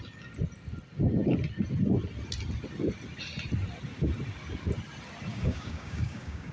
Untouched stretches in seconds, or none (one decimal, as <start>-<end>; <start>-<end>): 0.0-5.3